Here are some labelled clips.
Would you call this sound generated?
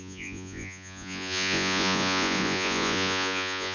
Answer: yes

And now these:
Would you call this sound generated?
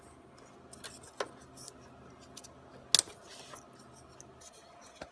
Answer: no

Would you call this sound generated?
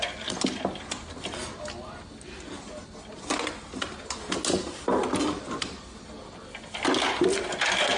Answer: no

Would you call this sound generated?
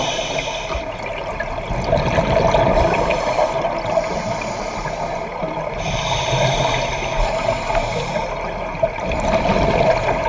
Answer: no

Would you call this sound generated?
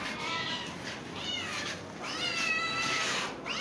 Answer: no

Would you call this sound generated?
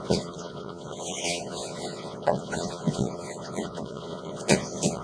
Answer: yes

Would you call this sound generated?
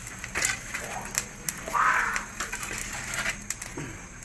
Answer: no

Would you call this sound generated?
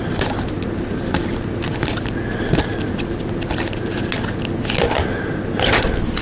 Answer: no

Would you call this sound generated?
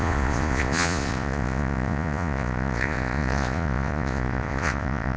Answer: yes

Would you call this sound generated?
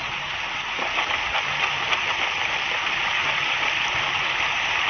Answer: no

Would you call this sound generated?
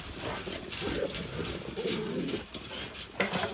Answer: no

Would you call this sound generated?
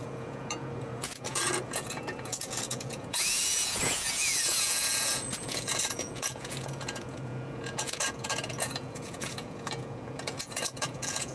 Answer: yes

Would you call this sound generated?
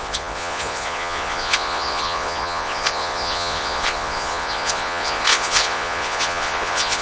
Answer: yes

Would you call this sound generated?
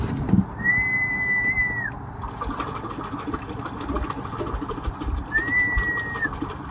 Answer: no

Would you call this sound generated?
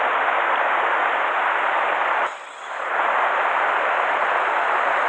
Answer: no